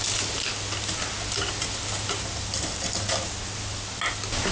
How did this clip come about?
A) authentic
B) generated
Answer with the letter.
A